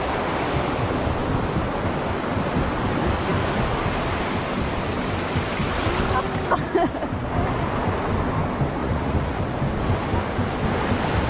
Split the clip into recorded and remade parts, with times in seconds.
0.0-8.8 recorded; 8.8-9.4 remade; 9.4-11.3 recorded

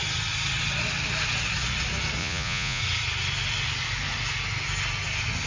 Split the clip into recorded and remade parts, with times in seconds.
0.0-2.2 recorded; 2.2-2.8 remade; 2.8-5.5 recorded